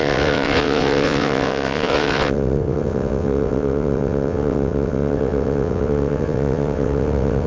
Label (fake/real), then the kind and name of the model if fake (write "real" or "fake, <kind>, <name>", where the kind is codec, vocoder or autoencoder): fake, vocoder, WaveNeXt